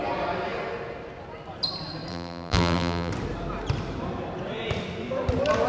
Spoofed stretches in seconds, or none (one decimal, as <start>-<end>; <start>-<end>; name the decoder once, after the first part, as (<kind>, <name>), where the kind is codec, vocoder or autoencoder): 2.1-3.1 (vocoder, BigVGAN v2)